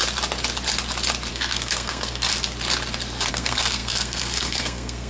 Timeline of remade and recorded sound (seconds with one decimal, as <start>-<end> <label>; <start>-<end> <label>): 0.0-1.3 recorded; 1.3-2.3 remade; 2.3-3.3 recorded; 3.3-5.1 remade